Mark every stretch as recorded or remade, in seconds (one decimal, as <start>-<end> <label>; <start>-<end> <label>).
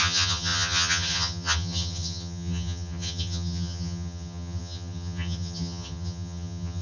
0.0-6.8 remade